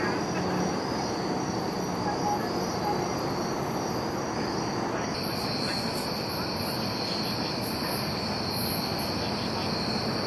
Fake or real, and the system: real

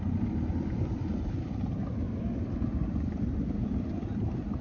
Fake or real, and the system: real